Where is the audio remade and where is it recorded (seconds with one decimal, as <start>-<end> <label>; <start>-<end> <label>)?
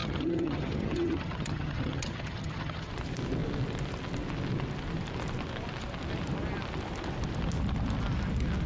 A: 0.0-2.9 remade; 2.9-8.7 recorded